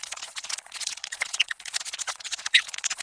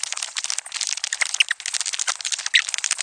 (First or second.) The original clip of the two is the second